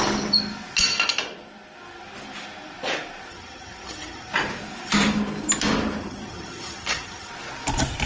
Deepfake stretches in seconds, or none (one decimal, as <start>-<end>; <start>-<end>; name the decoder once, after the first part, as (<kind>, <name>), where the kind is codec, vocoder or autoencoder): 3.3-4.3 (vocoder, HiFi-GAN); 6.0-7.3